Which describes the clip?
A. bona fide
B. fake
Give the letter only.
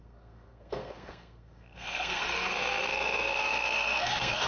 B